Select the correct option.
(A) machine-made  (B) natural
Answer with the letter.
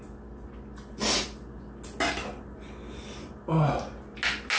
B